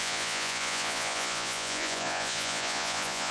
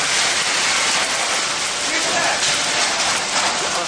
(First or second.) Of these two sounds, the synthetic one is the first